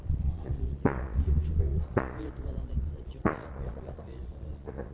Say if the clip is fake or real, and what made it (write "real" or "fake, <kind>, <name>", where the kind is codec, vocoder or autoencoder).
fake, vocoder, Vocos